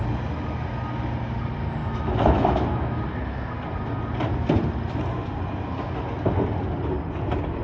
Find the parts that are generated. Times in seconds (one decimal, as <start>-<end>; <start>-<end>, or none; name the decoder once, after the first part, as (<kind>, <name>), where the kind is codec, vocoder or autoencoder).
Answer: 1.8-3.0 (autoencoder, DAC-VAE)